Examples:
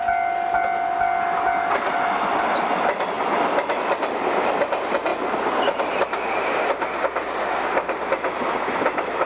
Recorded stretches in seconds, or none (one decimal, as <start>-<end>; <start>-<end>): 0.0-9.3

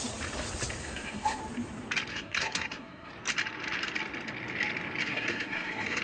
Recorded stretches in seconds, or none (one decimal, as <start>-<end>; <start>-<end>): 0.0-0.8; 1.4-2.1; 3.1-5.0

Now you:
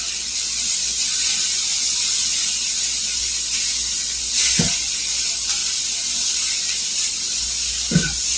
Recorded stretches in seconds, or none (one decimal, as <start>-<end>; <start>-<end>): 0.0-8.4

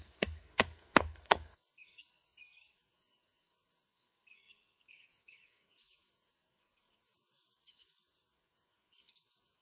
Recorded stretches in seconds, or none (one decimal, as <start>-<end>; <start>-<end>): none